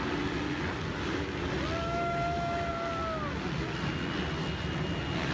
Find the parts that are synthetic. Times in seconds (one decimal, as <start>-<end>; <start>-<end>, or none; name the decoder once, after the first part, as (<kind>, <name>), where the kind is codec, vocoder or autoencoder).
1.8-2.7 (autoencoder, DAC-VAE)